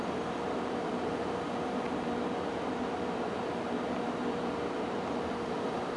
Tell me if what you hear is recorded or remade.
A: remade